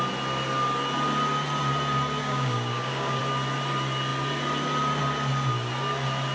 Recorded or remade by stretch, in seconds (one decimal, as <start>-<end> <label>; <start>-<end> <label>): 0.0-2.2 recorded; 2.2-3.2 remade; 3.2-6.3 recorded